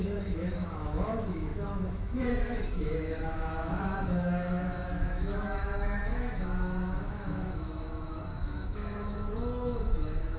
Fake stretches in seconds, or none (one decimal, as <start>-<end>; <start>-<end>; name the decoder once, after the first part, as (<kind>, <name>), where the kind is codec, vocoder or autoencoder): 0.0-10.4 (autoencoder, DAC-VAE)

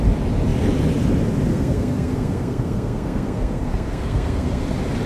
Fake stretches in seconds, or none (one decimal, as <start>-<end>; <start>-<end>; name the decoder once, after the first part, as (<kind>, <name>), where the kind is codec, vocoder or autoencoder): 1.5-4.6 (codec, SNAC)